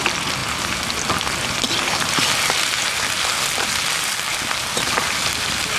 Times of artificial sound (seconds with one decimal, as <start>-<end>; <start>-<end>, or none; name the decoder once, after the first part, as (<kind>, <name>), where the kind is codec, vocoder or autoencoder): 0.0-0.4 (vocoder, BigVGAN v2); 3.9-5.8

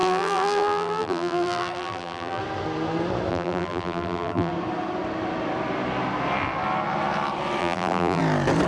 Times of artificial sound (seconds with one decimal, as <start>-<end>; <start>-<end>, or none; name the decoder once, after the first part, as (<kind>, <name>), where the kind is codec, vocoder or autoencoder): 0.0-2.4 (vocoder, BigVGAN v2); 3.3-4.5; 7.6-8.2

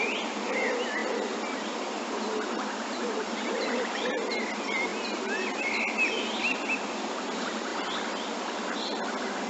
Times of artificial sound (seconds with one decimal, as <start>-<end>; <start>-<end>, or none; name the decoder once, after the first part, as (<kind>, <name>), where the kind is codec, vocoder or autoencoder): none

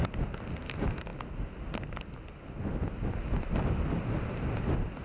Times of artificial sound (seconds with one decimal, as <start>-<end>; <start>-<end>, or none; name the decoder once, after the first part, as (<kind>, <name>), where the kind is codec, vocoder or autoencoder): none

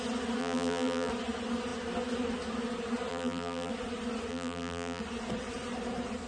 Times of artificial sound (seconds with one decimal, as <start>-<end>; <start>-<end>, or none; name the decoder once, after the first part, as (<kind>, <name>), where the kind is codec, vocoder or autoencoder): 0.4-1.1 (vocoder, BigVGAN v2); 3.1-3.7; 4.3-5.0

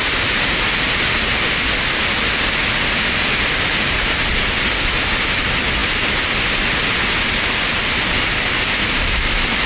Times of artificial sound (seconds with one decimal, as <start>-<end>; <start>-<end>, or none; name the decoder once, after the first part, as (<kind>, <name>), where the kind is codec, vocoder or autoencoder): none